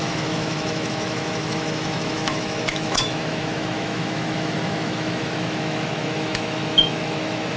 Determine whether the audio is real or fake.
fake